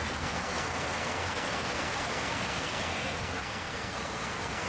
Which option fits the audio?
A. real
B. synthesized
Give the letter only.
B